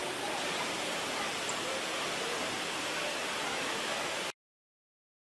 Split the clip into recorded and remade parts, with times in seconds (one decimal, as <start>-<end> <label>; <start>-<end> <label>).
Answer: 0.0-3.5 recorded; 3.5-4.2 remade; 4.2-5.3 recorded